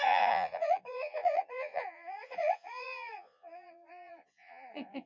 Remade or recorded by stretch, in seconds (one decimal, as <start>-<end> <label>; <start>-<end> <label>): 0.0-5.1 remade